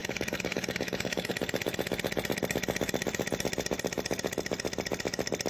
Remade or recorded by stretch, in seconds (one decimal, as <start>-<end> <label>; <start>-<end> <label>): 0.0-1.3 remade; 1.3-5.5 recorded